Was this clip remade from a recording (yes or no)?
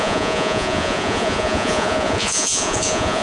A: yes